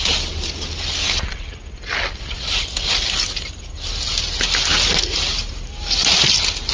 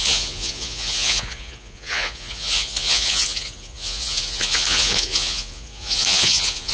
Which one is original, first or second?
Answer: first